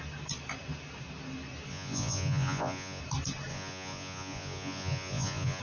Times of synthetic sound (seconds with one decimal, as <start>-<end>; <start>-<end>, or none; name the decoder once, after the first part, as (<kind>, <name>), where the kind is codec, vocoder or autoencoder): 1.7-3.0 (vocoder, Vocos); 3.5-5.6